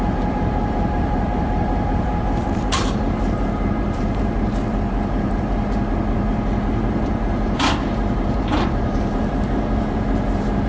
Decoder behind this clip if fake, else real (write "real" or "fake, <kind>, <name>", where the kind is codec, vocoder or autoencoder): fake, vocoder, BigVGAN v2